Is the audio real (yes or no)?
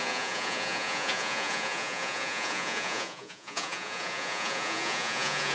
no